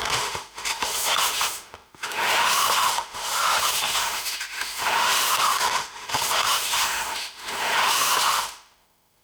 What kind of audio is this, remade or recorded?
remade